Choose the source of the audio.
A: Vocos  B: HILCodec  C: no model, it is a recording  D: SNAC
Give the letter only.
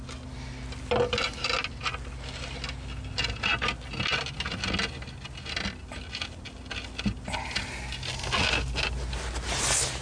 C